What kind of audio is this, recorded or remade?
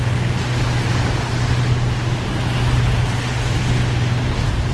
recorded